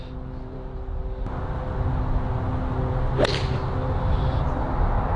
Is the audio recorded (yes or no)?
yes